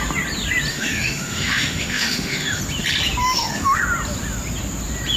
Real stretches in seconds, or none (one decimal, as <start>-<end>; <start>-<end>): 0.0-0.7; 2.6-3.2; 3.8-5.2